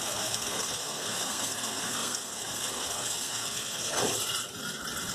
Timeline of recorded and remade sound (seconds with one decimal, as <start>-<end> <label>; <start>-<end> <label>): 0.0-4.0 remade; 4.0-5.1 recorded